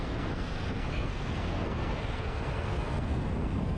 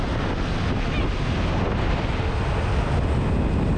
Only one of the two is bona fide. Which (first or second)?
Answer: second